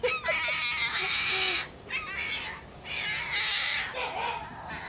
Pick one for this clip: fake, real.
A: real